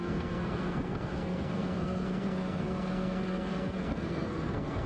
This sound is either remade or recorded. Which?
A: remade